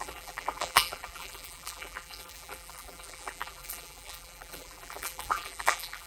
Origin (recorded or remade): remade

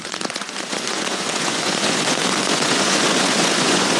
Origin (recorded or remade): remade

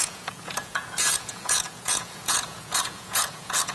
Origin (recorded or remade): remade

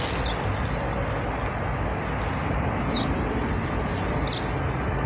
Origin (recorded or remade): recorded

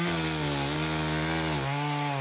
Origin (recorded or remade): recorded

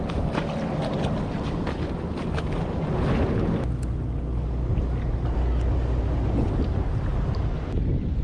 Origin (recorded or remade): recorded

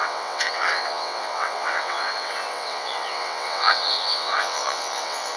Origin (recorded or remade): remade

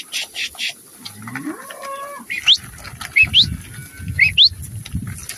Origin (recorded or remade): recorded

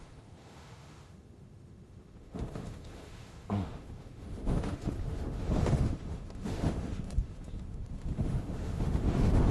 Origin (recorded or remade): remade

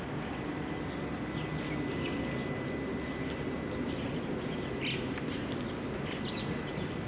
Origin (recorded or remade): recorded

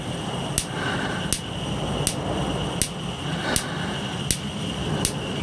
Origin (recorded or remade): recorded